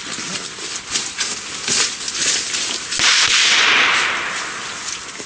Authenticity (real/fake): real